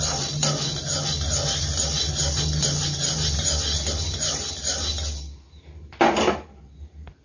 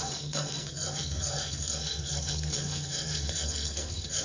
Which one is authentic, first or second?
first